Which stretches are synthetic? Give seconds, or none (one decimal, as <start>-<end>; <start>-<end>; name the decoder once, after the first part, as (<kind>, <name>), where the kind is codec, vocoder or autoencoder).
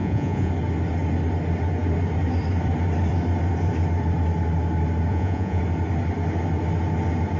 0.0-0.5 (vocoder, Vocos); 5.1-5.6